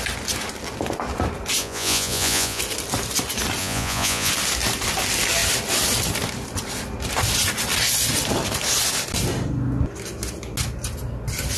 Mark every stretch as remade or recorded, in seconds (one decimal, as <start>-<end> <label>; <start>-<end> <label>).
0.0-1.6 recorded; 1.6-2.6 remade; 2.6-3.6 recorded; 3.6-4.3 remade; 4.3-11.6 recorded